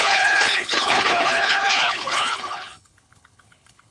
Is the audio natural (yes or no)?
no